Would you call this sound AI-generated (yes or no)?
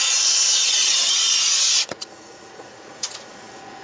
yes